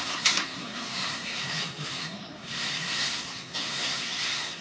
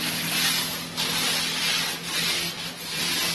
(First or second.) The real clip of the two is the second